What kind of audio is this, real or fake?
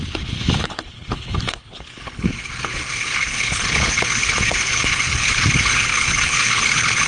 fake